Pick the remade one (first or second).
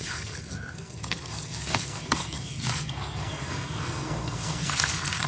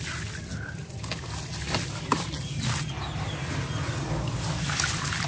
first